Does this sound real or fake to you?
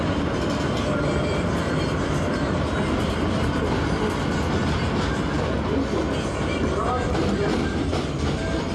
real